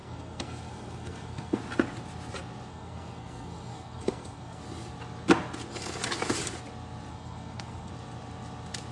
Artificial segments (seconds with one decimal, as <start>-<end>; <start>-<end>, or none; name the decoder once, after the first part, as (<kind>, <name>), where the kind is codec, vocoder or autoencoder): 0.0-1.6 (codec, SNAC); 2.7-4.6; 7.1-7.9